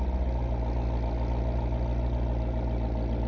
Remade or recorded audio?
recorded